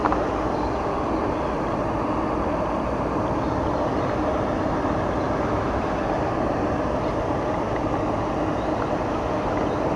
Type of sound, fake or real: real